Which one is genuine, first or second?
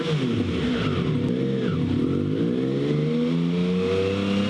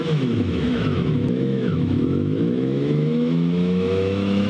first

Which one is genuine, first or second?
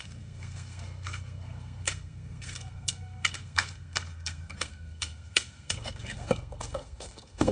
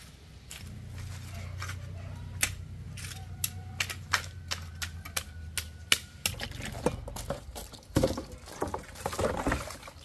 second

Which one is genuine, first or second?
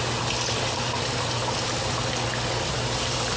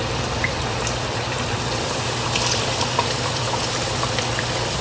first